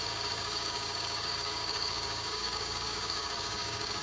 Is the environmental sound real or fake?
fake